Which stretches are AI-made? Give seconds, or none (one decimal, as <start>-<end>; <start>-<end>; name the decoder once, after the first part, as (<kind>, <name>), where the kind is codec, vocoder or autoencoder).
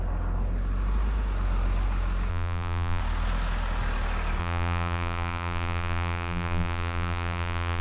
2.3-3.0 (vocoder, BigVGAN v2); 4.4-7.8